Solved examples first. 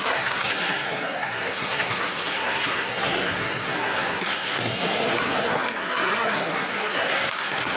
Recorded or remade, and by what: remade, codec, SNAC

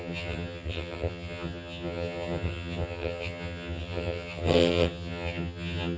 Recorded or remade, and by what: remade, vocoder, HiFi-GAN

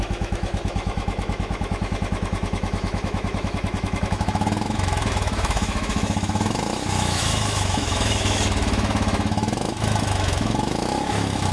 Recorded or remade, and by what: remade, autoencoder, DAC-VAE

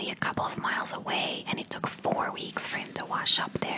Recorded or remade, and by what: recorded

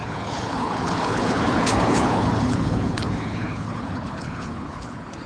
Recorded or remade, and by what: remade, codec, HILCodec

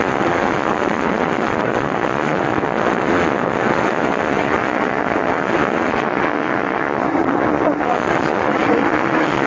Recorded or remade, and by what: remade, vocoder, Vocos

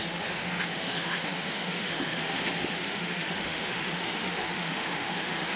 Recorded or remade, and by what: remade, autoencoder, DAC-VAE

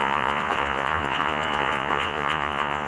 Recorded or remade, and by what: remade, vocoder, Vocos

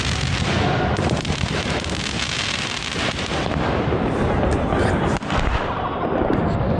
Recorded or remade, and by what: recorded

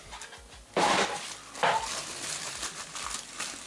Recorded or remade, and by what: recorded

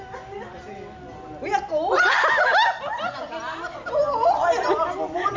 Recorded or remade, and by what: recorded